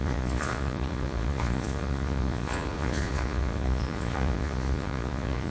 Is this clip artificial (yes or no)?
yes